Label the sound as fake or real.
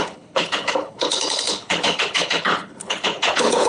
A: fake